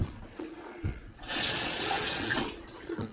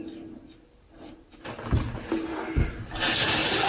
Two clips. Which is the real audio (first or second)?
second